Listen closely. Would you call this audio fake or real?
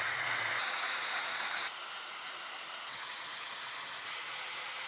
fake